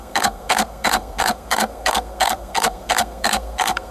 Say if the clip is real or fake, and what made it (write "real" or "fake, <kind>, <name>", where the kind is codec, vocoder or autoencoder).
fake, codec, SNAC